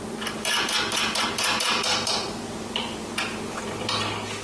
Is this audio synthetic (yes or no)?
no